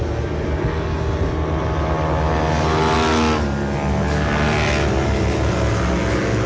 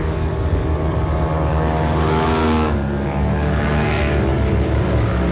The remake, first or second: second